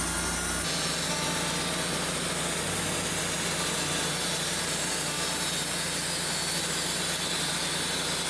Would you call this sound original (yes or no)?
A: yes